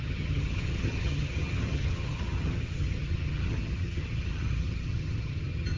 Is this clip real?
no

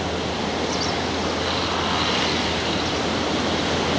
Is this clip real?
yes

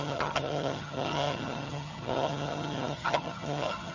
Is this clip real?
no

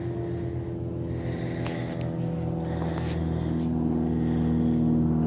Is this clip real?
yes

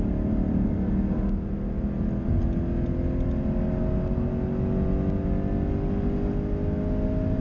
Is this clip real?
yes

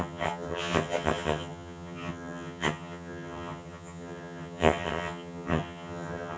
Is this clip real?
no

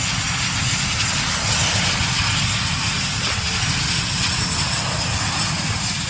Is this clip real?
yes